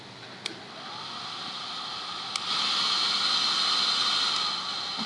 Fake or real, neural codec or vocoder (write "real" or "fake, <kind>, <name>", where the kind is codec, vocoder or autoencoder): real